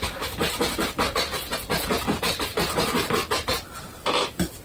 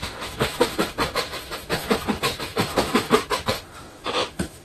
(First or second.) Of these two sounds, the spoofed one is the second